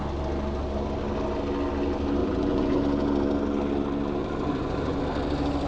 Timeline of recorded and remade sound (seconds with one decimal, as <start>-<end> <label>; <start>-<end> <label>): 0.0-2.2 recorded; 2.2-2.8 remade; 2.8-4.2 recorded; 4.2-5.0 remade; 5.0-5.7 recorded